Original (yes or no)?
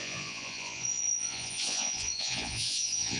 no